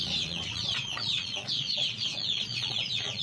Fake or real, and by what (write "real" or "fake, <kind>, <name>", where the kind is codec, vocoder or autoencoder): fake, vocoder, Vocos